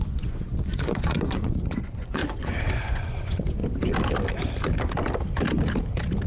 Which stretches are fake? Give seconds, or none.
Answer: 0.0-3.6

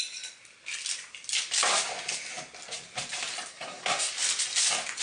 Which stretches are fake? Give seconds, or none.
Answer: 3.5-4.1

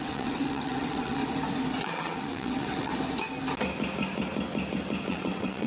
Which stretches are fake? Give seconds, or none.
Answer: 0.0-1.2; 1.8-2.9; 5.1-5.7

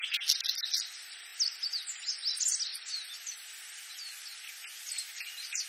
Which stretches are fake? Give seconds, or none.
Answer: none